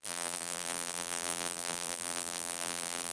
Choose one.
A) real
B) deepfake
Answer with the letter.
B